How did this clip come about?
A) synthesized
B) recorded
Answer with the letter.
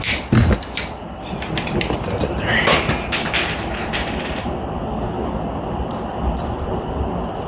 B